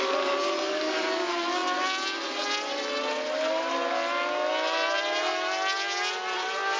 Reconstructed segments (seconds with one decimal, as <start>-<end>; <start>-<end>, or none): none